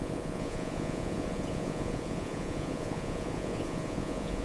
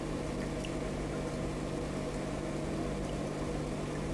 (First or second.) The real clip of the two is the second